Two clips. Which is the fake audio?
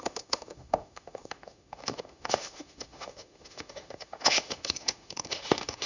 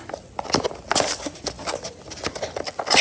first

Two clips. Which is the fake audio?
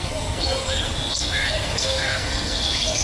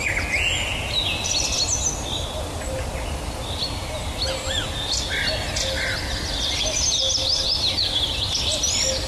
first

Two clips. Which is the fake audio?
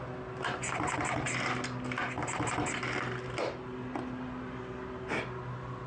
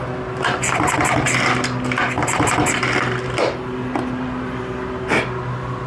second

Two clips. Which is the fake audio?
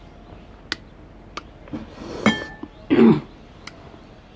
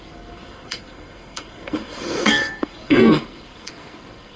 second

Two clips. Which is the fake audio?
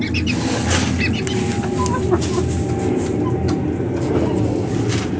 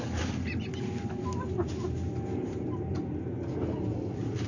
second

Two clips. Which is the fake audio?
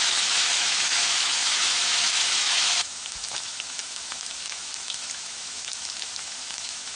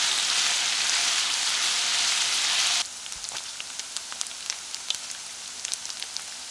first